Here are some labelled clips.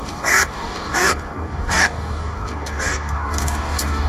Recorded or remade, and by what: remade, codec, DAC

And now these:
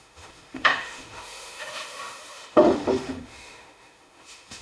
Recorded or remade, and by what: remade, autoencoder, DAC-VAE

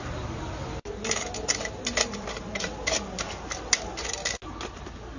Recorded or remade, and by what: recorded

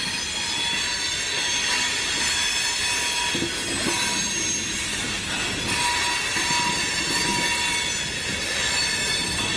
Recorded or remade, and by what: recorded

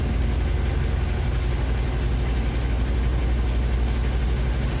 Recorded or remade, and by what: recorded